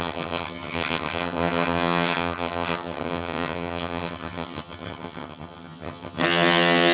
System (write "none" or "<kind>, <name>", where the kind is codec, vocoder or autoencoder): vocoder, HiFi-GAN